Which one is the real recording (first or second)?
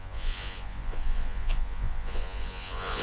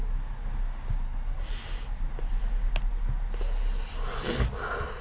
second